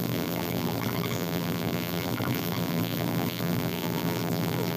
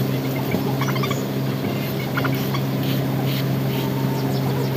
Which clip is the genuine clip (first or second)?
second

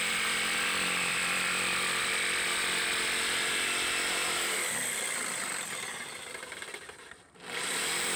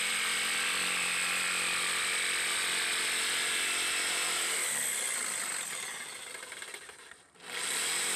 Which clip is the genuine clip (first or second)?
second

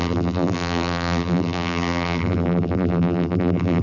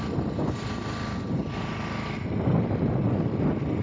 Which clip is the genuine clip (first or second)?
second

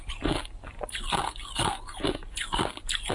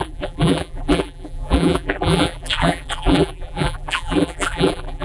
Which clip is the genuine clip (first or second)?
first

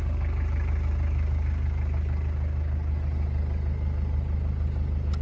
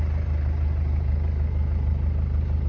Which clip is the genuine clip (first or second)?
first